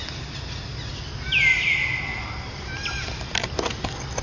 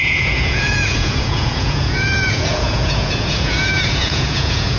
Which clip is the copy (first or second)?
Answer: second